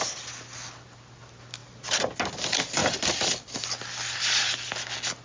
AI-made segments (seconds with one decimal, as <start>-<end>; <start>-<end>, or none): 2.8-3.6